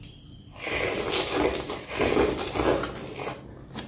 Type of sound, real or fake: real